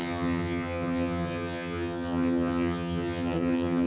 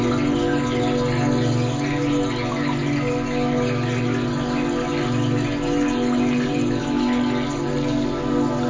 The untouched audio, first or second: second